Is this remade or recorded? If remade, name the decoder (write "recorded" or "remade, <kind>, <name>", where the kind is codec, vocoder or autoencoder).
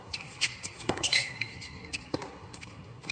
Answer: remade, codec, SNAC